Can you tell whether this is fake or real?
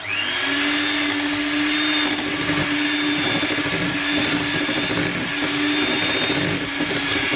real